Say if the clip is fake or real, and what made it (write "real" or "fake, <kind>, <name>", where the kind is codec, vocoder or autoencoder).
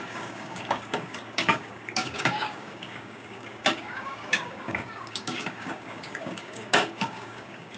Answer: fake, codec, DAC